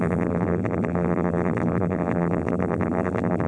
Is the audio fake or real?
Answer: fake